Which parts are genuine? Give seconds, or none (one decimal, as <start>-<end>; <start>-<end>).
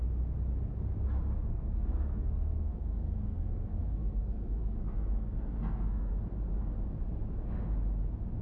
0.0-1.5; 6.1-8.4